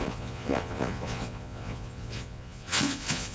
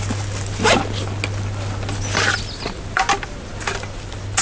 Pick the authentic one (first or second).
second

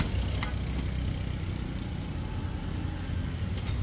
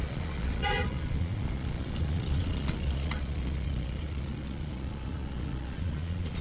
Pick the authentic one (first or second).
first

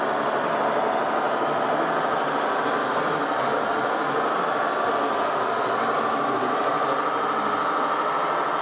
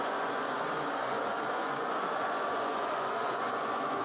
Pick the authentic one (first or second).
first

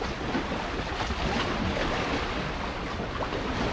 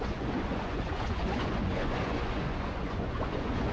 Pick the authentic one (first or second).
first